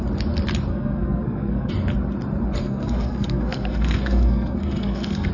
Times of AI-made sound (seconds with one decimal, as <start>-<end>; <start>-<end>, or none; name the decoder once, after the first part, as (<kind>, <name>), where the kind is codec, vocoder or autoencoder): 0.7-1.7 (codec, SNAC); 2.6-5.3